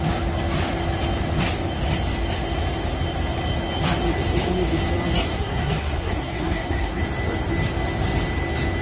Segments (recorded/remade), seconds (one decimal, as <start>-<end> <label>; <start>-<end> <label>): 0.0-5.3 recorded; 5.3-7.0 remade; 7.0-8.8 recorded